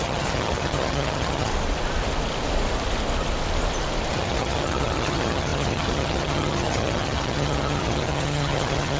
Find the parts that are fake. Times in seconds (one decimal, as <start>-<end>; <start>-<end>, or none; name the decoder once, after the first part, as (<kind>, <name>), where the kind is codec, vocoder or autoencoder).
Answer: 0.0-1.5 (vocoder, HiFi-GAN); 4.1-9.0